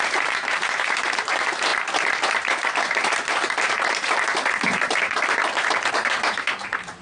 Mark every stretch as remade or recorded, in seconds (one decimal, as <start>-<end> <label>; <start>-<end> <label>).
0.0-1.7 remade; 1.7-5.9 recorded; 5.9-7.0 remade